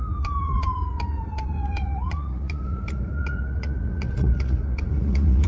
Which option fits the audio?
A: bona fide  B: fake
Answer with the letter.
B